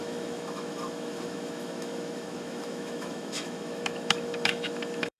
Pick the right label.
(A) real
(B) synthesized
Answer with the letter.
B